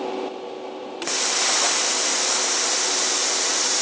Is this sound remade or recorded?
recorded